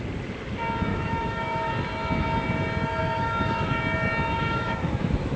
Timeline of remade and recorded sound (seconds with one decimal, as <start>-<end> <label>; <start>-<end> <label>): 0.0-0.9 recorded; 0.9-1.7 remade; 1.7-3.0 recorded; 3.0-3.8 remade; 3.8-4.4 recorded; 4.4-5.4 remade